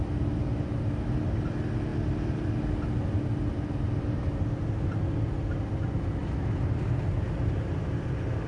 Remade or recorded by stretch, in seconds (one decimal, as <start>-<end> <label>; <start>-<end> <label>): 0.0-8.5 recorded